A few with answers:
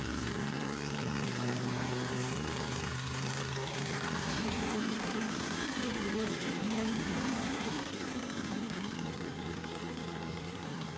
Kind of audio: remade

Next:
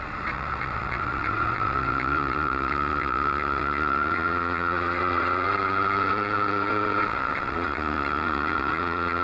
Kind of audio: remade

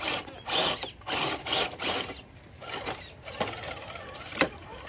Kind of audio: recorded